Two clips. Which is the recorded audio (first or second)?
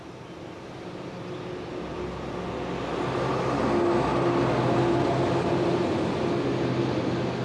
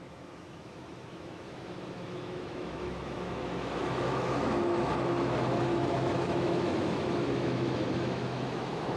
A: first